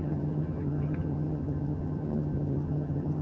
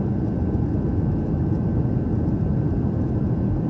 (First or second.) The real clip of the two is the second